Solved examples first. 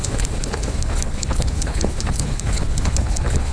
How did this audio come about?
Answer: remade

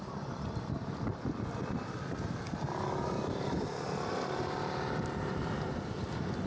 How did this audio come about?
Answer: recorded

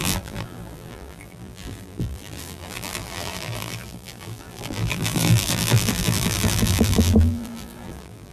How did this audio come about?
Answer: remade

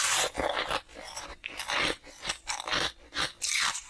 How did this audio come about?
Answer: recorded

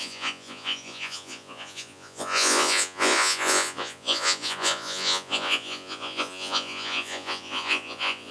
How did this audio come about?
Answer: remade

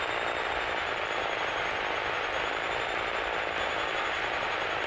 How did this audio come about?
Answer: recorded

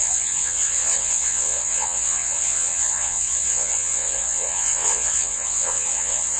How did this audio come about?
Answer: remade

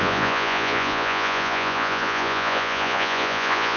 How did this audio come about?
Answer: remade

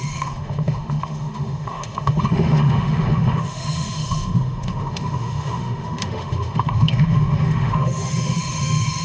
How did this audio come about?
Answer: remade